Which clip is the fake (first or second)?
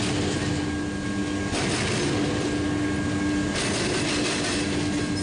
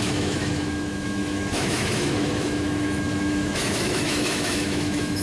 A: second